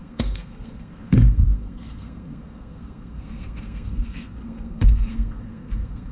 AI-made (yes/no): yes